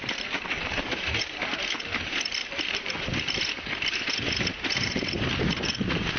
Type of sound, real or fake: fake